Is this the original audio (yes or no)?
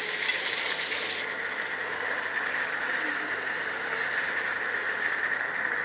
yes